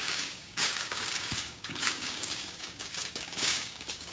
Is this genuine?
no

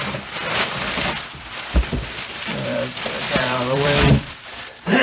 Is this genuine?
no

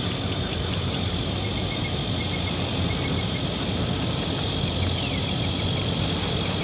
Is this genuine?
yes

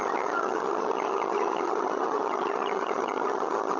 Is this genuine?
no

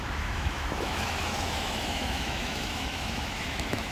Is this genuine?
no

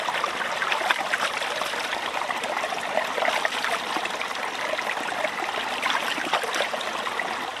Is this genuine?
yes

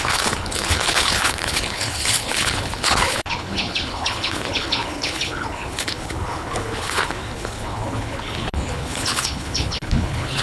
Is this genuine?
no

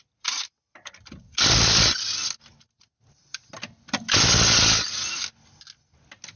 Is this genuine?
yes